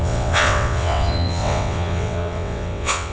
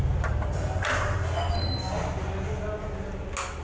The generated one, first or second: first